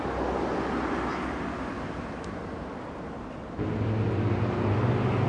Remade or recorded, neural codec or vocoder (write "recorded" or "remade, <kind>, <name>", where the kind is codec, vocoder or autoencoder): recorded